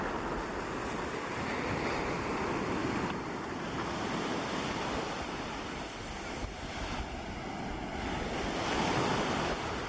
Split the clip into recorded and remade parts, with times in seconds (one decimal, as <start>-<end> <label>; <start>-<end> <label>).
0.0-9.9 recorded